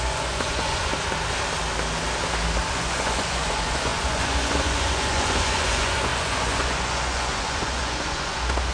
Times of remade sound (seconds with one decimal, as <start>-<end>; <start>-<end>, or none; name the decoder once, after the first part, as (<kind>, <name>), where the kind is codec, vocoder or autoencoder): 0.0-0.9 (vocoder, Vocos); 2.7-8.7